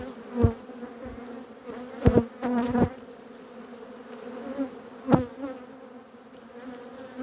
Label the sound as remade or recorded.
recorded